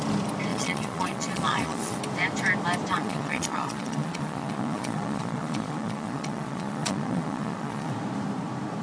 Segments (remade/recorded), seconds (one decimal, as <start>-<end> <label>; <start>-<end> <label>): 0.0-0.5 recorded; 0.5-2.0 remade; 2.0-2.9 recorded; 2.9-7.9 remade; 7.9-8.8 recorded